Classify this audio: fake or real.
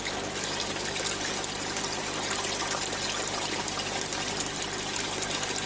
real